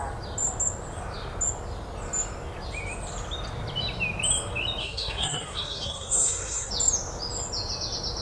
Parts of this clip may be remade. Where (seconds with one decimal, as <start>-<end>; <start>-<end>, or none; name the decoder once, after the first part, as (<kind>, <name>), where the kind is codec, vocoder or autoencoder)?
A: 4.8-6.7 (codec, SNAC)